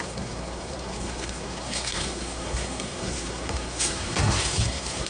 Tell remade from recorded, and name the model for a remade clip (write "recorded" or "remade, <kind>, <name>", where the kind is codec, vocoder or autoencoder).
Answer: remade, codec, SNAC